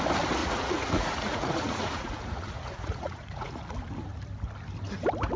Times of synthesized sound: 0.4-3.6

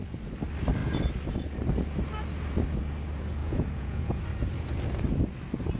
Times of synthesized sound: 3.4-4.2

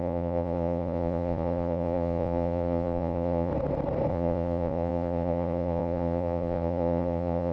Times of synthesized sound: 0.0-3.5; 4.1-7.5

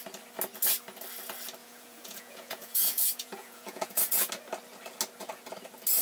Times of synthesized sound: 1.6-4.3

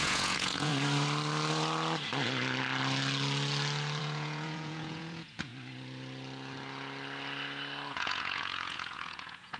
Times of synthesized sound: 0.0-0.7; 4.0-5.5; 7.9-9.6

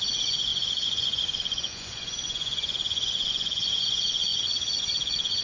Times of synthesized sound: 0.0-5.4

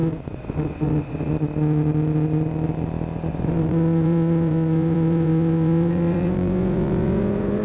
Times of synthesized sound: 0.0-1.3; 3.3-7.6